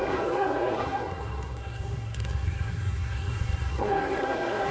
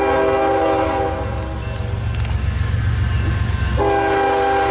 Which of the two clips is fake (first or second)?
first